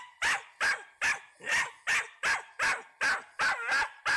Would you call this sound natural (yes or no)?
yes